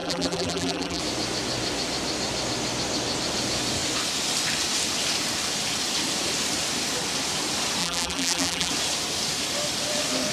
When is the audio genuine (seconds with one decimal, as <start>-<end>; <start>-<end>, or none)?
1.0-7.8; 8.7-10.3

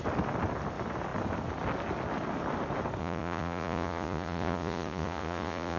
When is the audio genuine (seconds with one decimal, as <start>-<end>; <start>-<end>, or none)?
0.0-3.0

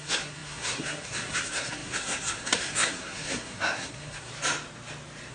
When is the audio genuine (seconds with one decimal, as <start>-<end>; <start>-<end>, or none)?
4.3-5.3

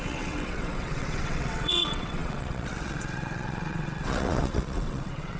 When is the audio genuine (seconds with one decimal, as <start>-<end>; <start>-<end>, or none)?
none

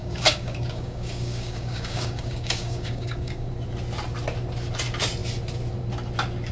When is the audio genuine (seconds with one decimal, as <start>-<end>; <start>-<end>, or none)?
3.5-6.5